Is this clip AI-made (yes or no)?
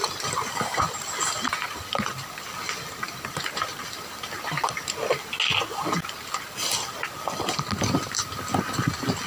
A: no